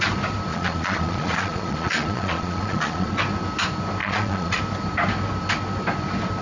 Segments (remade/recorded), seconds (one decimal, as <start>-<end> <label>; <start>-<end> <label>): 0.0-0.5 recorded; 0.5-3.2 remade; 3.2-4.0 recorded; 4.0-4.6 remade; 4.6-6.4 recorded